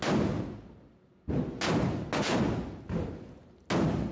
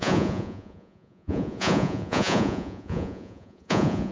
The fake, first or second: second